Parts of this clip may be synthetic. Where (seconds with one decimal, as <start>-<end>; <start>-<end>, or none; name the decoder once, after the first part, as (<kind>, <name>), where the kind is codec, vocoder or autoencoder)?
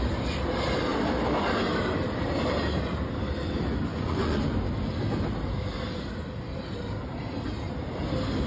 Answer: 3.9-4.4 (vocoder, Vocos)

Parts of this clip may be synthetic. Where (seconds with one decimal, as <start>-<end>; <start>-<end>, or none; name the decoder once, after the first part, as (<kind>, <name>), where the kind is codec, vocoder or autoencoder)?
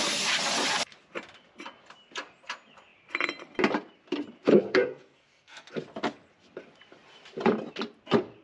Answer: 4.5-5.7 (codec, SNAC)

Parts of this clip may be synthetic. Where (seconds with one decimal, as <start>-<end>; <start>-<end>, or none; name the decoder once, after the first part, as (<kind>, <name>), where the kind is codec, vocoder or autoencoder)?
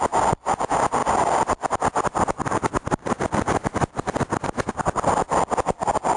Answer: none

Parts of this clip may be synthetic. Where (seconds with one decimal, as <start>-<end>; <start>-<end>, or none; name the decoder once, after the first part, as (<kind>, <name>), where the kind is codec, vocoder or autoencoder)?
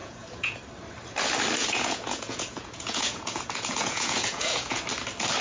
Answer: 0.0-0.6 (vocoder, Vocos); 1.6-4.8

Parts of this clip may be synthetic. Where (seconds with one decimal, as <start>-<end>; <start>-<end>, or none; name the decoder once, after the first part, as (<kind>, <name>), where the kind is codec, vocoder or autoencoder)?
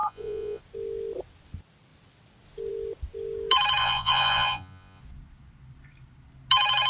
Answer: 0.0-0.6 (vocoder, Vocos); 3.8-5.0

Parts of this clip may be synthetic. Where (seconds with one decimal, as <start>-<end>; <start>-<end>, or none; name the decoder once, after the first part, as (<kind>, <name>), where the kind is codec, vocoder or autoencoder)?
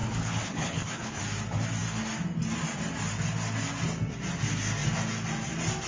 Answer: 0.0-1.2 (codec, HILCodec)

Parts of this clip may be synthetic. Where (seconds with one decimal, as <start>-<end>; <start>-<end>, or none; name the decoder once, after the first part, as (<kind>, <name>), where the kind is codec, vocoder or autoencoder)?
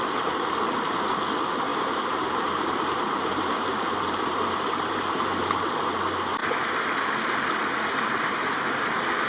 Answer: 1.7-5.7 (vocoder, BigVGAN v2)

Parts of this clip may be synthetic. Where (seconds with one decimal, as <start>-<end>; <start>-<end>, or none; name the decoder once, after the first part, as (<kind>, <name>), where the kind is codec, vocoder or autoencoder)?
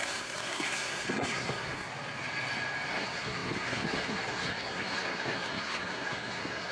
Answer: 0.0-1.9 (codec, SNAC); 2.9-6.7